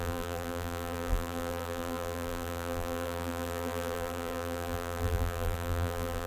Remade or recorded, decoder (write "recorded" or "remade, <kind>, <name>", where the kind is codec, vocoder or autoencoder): remade, vocoder, BigVGAN v2